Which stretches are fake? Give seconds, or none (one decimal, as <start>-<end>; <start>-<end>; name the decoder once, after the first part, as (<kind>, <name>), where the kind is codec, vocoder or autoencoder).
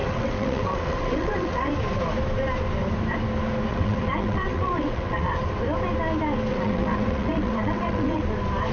0.0-1.7 (vocoder, WaveNeXt); 3.7-5.3; 6.5-8.2